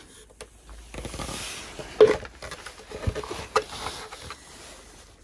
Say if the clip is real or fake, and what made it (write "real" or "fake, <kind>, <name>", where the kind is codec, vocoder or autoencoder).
real